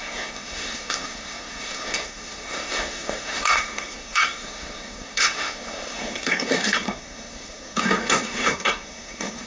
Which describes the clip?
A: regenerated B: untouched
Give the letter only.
A